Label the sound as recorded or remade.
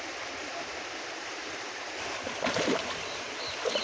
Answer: remade